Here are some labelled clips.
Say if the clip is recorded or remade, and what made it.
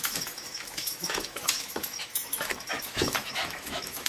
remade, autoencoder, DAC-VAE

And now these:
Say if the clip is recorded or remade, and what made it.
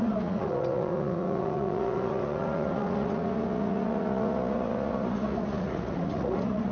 remade, vocoder, Vocos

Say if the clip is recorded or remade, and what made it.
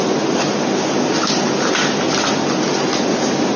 recorded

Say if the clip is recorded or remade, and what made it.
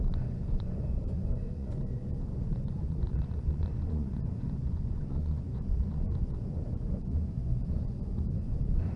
remade, vocoder, Vocos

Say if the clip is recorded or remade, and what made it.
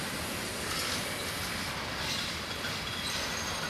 recorded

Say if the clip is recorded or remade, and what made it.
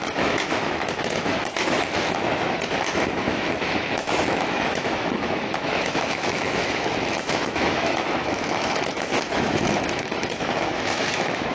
remade, autoencoder, DAC-VAE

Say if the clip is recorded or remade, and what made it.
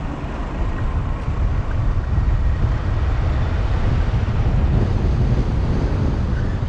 recorded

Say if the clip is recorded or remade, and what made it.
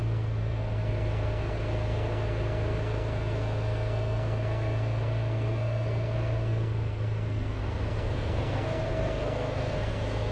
remade, codec, SNAC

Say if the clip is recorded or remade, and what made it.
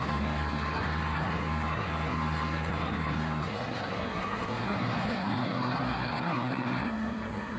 remade, codec, SNAC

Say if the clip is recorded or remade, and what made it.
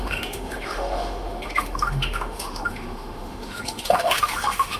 remade, autoencoder, DAC-VAE